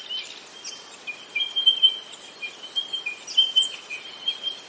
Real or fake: real